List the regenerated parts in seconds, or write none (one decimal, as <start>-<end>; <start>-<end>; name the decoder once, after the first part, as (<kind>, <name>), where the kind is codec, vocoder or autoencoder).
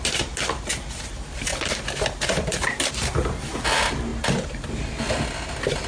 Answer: none